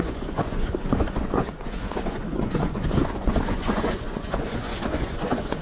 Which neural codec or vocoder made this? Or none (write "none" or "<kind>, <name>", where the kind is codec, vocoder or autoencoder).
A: vocoder, Vocos